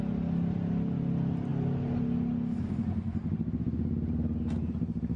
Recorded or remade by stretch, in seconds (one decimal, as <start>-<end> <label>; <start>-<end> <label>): 0.0-5.2 recorded